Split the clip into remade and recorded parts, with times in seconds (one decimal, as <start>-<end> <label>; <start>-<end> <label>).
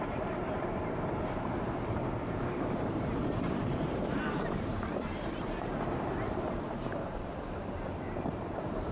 0.0-7.3 remade; 7.3-8.1 recorded; 8.1-8.9 remade